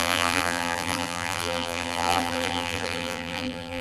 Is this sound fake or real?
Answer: fake